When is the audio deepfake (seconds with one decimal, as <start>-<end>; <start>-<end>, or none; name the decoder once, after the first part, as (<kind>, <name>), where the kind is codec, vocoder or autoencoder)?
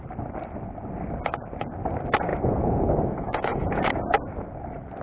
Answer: 2.3-3.9 (vocoder, Vocos)